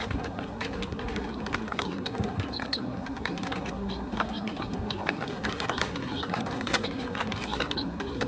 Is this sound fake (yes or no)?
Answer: yes